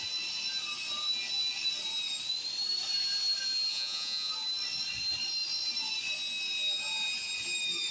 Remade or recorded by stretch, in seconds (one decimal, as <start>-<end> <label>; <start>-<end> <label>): 0.0-3.7 recorded; 3.7-4.3 remade; 4.3-7.9 recorded

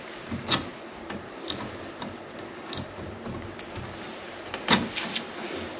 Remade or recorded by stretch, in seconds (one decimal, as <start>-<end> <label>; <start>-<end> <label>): 0.0-5.8 recorded

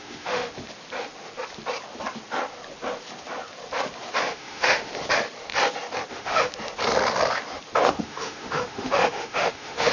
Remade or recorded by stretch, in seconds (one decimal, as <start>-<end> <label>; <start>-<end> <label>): 0.0-0.5 remade; 0.5-4.3 recorded; 4.3-4.9 remade; 4.9-6.1 recorded; 6.1-6.5 remade; 6.5-8.0 recorded; 8.0-9.9 remade